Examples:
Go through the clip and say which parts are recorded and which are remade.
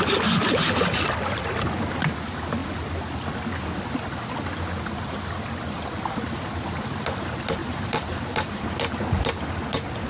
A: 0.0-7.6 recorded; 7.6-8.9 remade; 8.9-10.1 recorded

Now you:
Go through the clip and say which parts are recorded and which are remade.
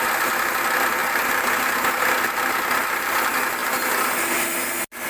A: 0.0-5.1 recorded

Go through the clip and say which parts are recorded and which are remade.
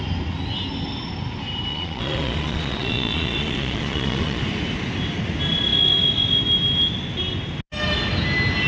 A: 0.0-1.7 recorded; 1.7-4.4 remade; 4.4-8.7 recorded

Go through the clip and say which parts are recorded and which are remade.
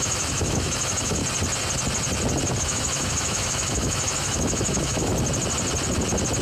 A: 0.0-1.2 remade; 1.2-2.6 recorded; 2.6-5.1 remade; 5.1-6.4 recorded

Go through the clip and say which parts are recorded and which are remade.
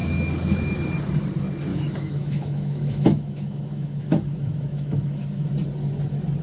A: 0.0-0.8 remade; 0.8-1.7 recorded; 1.7-5.5 remade; 5.5-6.4 recorded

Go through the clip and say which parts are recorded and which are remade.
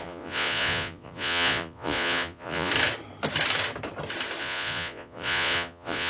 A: 0.0-2.7 remade; 2.7-4.4 recorded; 4.4-6.1 remade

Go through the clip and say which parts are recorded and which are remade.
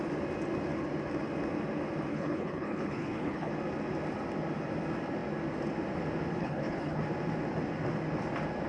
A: 0.0-2.1 recorded; 2.1-3.5 remade; 3.5-6.4 recorded; 6.4-7.0 remade; 7.0-8.7 recorded